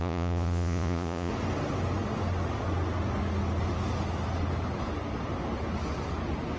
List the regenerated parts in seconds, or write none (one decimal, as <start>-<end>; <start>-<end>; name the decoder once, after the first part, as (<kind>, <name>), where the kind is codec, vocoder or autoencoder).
0.0-1.3 (vocoder, Vocos)